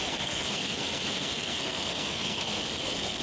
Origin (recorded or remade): remade